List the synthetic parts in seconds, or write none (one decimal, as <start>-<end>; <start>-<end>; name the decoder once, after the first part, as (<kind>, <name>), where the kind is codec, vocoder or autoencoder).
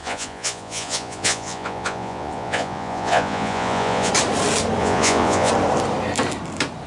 0.0-4.1 (vocoder, Vocos); 4.8-5.5